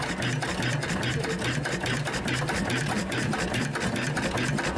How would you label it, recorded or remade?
recorded